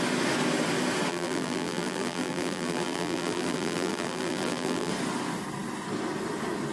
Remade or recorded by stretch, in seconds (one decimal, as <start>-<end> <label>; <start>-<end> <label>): 0.0-1.1 recorded; 1.1-4.9 remade; 4.9-6.7 recorded